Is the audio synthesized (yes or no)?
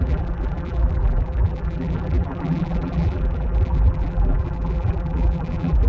yes